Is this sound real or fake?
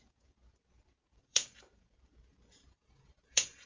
fake